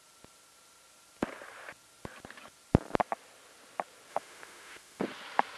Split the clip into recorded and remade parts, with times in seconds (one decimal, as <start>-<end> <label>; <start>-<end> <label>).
0.0-4.1 recorded; 4.1-5.0 remade; 5.0-5.6 recorded